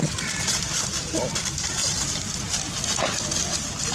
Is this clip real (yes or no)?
yes